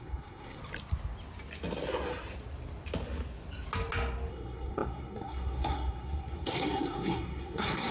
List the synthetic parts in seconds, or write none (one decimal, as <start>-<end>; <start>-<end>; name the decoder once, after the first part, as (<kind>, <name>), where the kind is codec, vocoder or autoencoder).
0.0-0.6 (codec, SNAC); 4.3-7.9